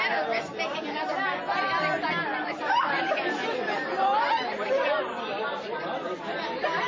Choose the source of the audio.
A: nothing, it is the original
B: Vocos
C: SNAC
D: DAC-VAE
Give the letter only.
A